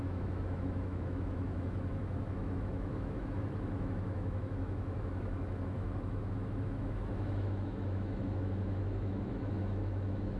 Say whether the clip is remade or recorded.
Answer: remade